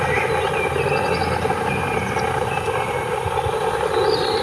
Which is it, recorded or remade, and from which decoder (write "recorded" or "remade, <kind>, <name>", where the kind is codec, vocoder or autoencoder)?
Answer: recorded